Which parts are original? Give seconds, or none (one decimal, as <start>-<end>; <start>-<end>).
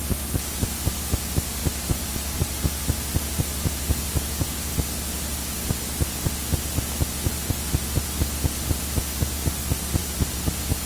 0.0-1.6; 2.6-10.0; 10.5-10.9